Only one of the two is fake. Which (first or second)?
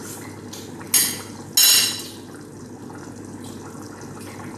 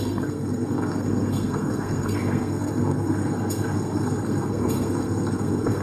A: second